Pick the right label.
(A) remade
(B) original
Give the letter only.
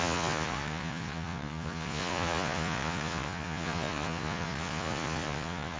A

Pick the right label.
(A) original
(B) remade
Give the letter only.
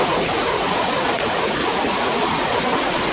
B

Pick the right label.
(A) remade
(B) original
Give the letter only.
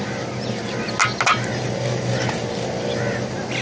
B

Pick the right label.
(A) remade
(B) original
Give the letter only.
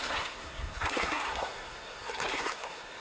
A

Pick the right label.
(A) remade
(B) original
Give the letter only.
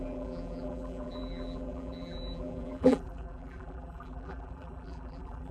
A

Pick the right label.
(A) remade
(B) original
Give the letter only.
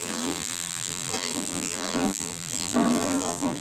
A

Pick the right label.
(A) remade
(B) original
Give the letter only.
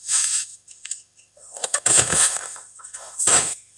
A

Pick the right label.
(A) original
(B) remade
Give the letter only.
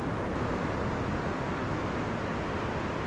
A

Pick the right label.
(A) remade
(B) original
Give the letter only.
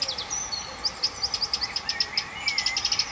B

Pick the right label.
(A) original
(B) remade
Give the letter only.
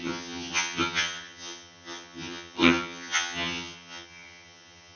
B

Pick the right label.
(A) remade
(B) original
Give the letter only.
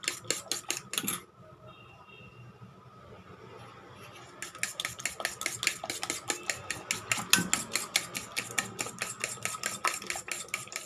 B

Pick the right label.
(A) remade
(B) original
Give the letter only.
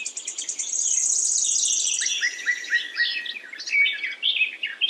B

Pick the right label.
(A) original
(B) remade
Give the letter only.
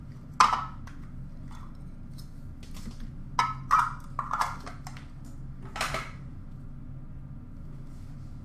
A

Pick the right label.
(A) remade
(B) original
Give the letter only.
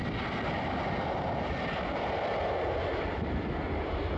B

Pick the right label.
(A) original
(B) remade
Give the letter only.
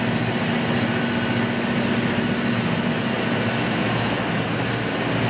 A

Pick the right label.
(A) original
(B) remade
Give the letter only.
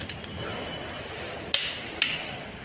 A